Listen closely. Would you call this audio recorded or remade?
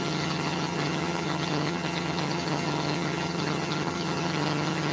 remade